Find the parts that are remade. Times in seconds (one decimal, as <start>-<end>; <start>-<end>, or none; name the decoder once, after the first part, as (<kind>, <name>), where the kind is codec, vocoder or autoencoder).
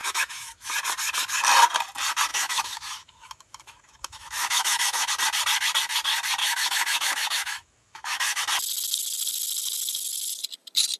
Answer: 0.0-0.7 (autoencoder, DAC-VAE); 2.3-5.1; 6.4-8.4